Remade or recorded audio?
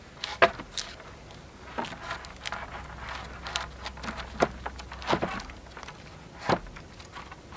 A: recorded